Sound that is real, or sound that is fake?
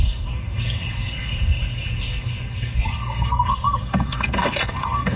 fake